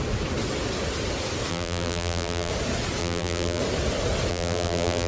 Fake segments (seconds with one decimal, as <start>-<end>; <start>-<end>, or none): 1.5-2.5; 3.0-3.6; 4.3-5.1